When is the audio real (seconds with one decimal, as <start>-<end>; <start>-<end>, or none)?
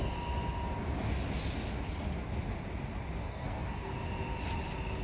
0.0-3.2; 3.9-5.0